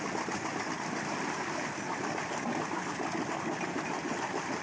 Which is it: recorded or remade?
recorded